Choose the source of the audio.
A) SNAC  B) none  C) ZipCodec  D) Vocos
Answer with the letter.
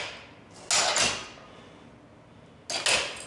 B